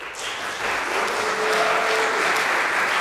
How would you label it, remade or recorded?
recorded